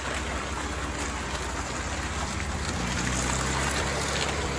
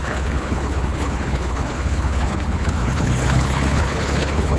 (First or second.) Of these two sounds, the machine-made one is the second